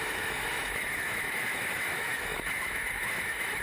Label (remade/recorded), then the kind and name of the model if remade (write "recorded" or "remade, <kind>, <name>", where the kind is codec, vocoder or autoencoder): remade, autoencoder, DAC-VAE